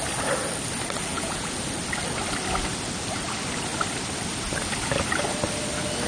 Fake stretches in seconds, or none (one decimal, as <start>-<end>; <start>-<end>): 1.1-1.6